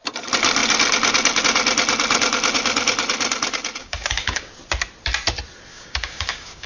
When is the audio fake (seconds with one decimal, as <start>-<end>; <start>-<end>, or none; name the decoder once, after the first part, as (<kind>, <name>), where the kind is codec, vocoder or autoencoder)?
3.8-4.5 (codec, DAC); 5.7-6.7

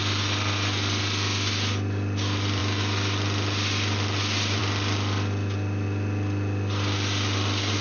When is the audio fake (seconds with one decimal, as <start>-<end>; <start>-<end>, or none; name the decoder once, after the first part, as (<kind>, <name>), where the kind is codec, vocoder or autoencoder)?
none

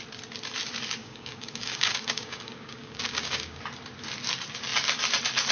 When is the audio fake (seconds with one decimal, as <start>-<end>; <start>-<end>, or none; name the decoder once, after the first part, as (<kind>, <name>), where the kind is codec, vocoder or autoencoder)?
1.0-3.6 (codec, DAC)

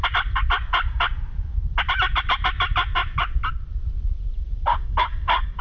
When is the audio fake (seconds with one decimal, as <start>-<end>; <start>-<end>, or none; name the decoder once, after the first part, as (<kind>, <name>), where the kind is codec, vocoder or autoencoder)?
4.7-5.6 (codec, DAC)

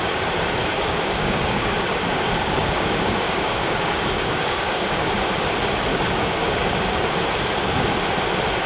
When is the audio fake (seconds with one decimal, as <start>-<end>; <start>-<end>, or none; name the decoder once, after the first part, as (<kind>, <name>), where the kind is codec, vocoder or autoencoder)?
0.6-5.1 (codec, DAC); 5.9-6.9